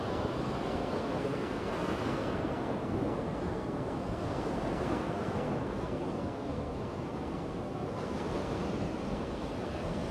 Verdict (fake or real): fake